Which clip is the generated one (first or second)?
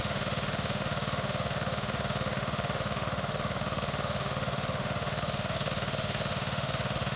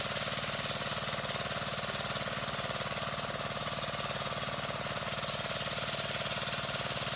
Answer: first